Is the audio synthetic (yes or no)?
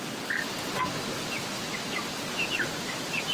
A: no